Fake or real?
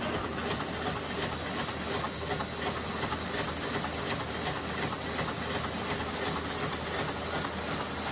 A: real